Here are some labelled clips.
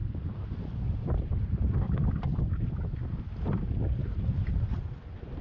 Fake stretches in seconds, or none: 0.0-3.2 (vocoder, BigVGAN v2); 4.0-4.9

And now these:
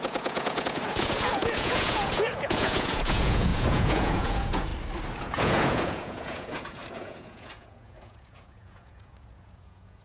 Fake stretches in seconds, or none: 0.0-4.7 (vocoder, Vocos); 5.2-10.0

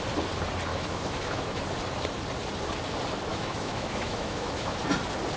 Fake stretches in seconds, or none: 0.7-1.6 (autoencoder, DAC-VAE); 3.3-4.8

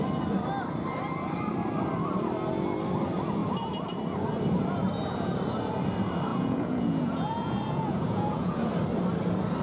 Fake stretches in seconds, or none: 6.3-8.7 (vocoder, Vocos)

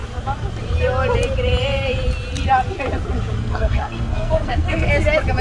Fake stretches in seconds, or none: 3.4-4.9 (codec, SNAC)

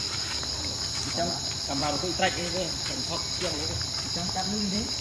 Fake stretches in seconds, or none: 1.8-5.0 (vocoder, BigVGAN v2)

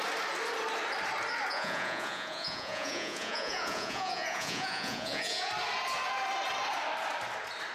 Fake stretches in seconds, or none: 1.5-5.5 (vocoder, Vocos)